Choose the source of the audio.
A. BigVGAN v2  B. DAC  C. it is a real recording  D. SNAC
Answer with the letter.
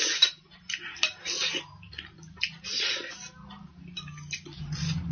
C